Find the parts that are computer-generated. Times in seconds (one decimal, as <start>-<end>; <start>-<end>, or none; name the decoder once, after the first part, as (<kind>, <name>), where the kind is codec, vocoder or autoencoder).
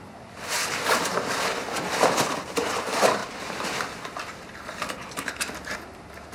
0.0-0.6 (vocoder, BigVGAN v2); 1.8-3.2; 3.9-6.3